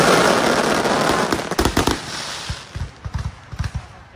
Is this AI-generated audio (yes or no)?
no